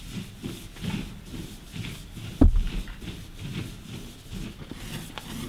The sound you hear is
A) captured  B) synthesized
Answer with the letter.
A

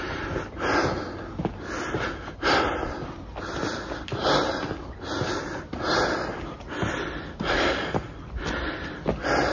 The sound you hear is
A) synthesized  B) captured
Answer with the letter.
B